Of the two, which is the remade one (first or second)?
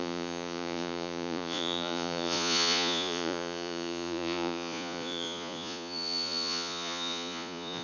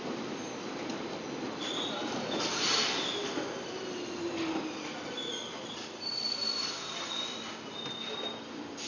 first